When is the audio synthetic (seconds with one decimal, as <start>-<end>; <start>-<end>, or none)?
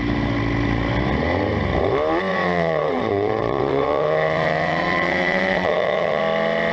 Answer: 2.3-6.2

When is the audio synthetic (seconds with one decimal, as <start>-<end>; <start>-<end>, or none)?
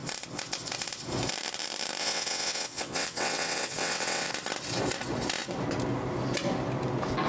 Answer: 2.0-4.3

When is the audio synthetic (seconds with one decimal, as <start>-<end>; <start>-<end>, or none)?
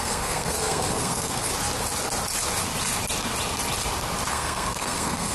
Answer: 0.0-1.5; 4.3-5.3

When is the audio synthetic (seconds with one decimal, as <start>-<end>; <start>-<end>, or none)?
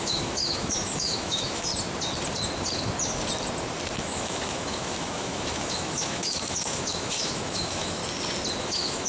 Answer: 0.0-1.7; 4.0-8.0; 8.6-9.1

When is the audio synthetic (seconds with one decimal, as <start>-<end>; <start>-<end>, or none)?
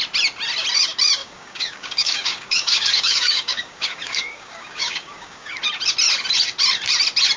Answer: 1.2-5.6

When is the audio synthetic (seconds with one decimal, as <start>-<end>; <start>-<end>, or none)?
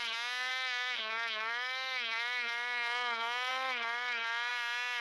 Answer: 0.5-3.5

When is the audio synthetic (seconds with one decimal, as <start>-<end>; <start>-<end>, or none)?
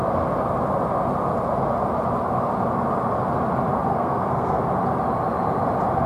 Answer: 3.9-4.6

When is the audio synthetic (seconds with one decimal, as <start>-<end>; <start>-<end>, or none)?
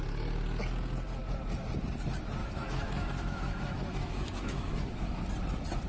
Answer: 2.4-5.2